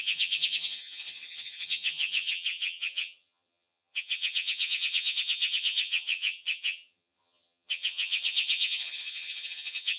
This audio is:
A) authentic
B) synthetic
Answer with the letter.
B